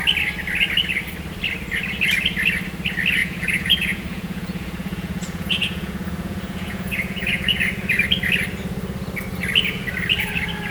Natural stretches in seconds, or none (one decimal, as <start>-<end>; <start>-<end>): 0.0-3.2; 7.9-10.7